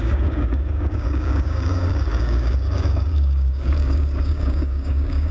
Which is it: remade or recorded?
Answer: remade